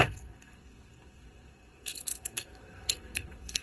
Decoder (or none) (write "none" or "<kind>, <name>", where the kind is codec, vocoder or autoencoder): codec, SNAC